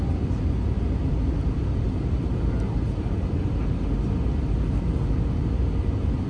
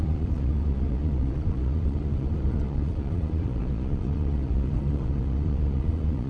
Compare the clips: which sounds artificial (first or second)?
second